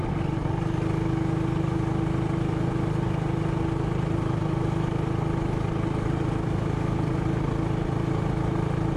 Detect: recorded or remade recorded